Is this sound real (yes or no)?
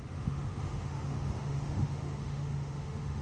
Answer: no